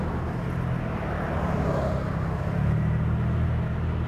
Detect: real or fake real